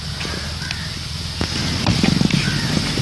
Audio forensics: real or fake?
real